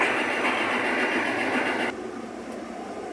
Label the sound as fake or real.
real